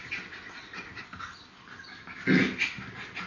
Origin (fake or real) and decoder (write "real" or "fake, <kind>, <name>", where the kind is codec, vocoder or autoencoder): real